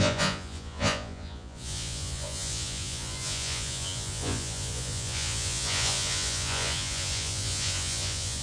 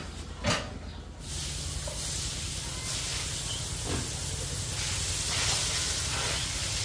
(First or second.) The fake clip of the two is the first